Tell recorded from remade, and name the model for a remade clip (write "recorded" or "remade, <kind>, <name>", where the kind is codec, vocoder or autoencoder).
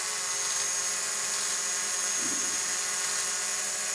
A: recorded